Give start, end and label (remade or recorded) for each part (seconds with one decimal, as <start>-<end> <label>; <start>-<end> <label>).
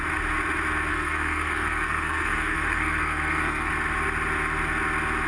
0.0-0.9 recorded; 0.9-3.7 remade; 3.7-5.3 recorded